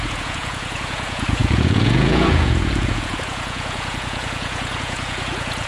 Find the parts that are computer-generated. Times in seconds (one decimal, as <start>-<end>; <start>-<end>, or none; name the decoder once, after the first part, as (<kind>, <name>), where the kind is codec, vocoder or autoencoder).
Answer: 0.0-5.7 (vocoder, Vocos)